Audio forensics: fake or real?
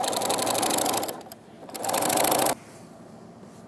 real